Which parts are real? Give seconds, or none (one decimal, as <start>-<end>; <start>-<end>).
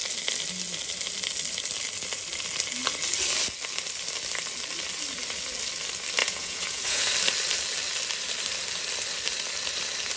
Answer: 0.0-6.2; 7.1-10.2